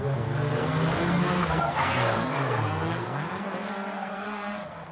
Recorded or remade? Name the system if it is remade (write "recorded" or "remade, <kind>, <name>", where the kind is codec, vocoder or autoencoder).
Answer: remade, codec, SNAC